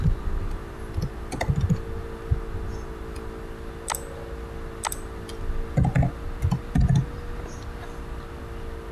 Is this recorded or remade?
recorded